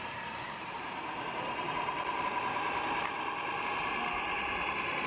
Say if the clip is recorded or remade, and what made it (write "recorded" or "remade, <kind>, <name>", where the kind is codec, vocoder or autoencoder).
remade, vocoder, BigVGAN v2